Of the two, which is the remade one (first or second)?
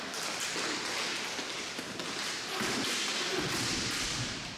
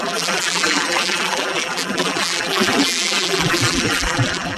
second